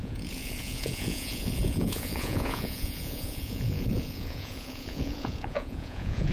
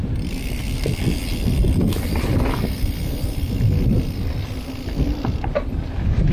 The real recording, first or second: second